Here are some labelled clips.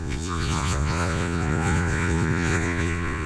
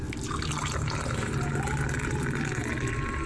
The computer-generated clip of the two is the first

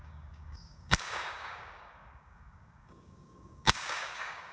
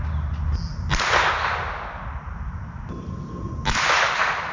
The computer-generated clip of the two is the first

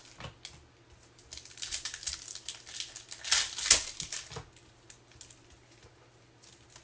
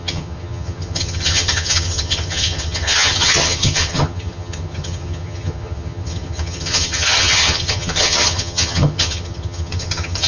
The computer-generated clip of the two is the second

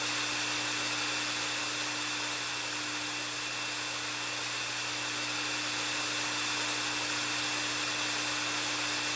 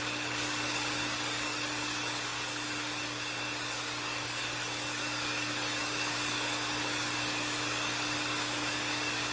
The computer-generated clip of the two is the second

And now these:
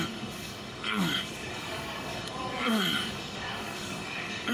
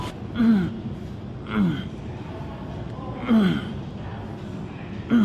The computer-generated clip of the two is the first